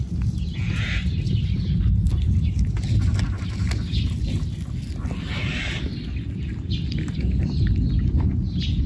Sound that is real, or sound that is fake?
real